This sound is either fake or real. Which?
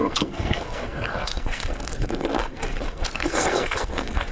fake